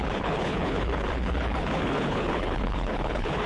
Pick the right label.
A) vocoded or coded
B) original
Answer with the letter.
A